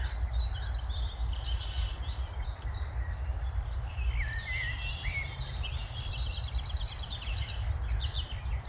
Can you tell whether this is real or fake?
real